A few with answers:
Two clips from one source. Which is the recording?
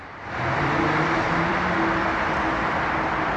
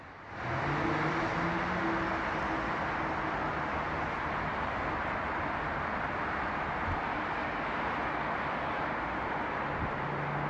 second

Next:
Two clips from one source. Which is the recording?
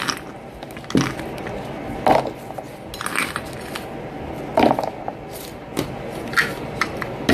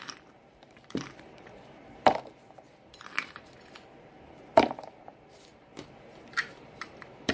first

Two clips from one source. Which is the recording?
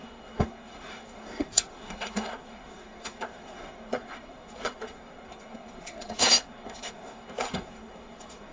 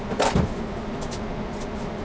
second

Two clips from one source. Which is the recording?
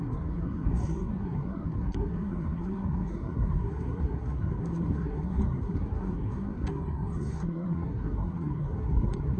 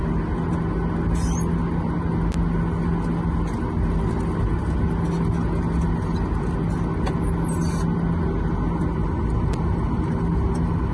second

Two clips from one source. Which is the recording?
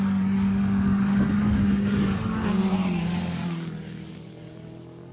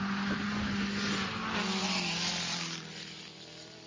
second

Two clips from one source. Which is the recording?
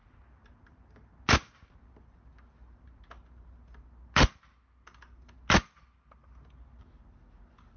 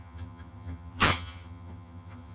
first